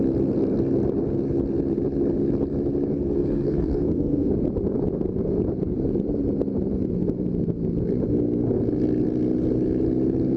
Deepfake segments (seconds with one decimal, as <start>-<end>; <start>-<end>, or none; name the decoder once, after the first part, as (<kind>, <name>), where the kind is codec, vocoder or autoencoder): 2.9-4.3 (codec, SNAC)